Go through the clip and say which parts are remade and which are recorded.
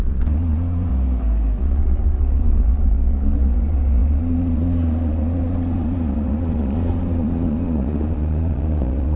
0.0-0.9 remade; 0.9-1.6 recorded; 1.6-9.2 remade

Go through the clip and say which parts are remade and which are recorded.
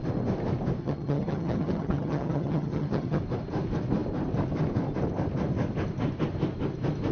0.0-0.8 recorded; 0.8-3.2 remade; 3.2-7.1 recorded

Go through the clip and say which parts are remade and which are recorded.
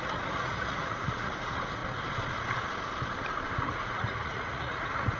0.0-1.8 remade; 1.8-3.5 recorded; 3.5-5.2 remade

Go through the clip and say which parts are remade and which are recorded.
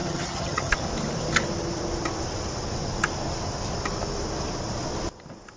0.0-0.8 remade; 0.8-5.6 recorded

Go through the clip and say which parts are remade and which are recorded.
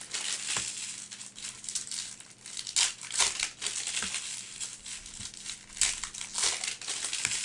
0.0-7.4 recorded